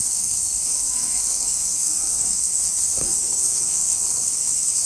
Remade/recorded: remade